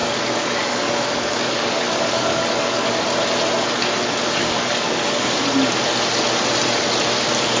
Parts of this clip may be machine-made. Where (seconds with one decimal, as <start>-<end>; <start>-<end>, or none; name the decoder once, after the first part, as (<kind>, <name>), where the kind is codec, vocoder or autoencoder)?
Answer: 0.0-2.9 (codec, DAC); 4.4-5.4